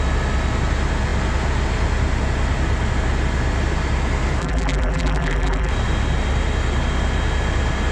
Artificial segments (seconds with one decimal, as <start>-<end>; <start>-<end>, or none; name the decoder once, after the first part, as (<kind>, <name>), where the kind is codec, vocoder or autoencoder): 4.4-5.7 (vocoder, BigVGAN v2)

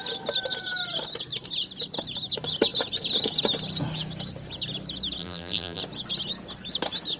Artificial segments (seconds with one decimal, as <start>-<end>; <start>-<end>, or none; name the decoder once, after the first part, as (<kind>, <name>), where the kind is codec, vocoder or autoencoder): 5.2-5.8 (vocoder, BigVGAN v2)